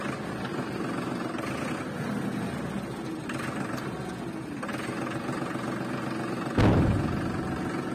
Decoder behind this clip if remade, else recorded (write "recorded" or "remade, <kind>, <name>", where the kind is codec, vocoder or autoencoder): recorded